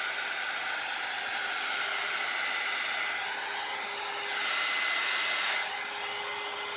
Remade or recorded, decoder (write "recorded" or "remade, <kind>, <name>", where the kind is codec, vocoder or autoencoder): recorded